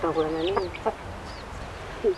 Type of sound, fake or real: real